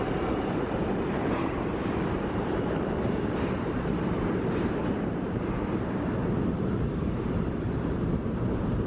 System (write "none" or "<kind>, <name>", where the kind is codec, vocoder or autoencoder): vocoder, BigVGAN v2